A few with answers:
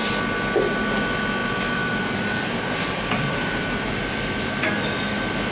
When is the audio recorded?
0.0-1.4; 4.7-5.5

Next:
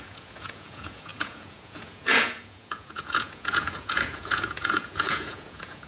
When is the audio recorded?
none

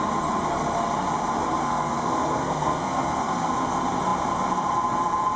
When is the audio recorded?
0.0-1.6; 3.5-5.4

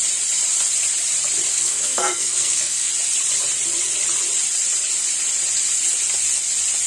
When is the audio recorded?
0.0-1.5; 2.9-6.9

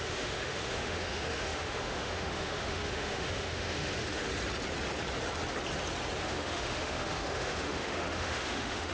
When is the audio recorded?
4.3-6.2

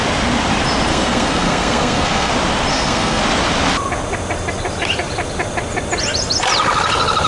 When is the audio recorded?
0.0-0.9; 2.3-2.7; 3.2-7.3